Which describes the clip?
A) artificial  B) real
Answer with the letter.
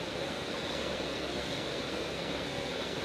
A